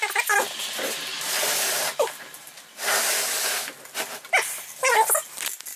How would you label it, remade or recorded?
recorded